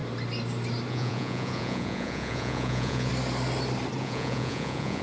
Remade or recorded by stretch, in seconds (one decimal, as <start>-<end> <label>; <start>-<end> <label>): 0.0-0.9 recorded; 0.9-3.1 remade; 3.1-4.0 recorded; 4.0-5.0 remade